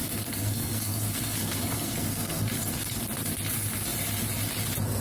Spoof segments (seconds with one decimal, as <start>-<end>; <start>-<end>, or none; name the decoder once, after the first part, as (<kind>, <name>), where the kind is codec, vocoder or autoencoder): 0.0-3.0 (codec, SNAC)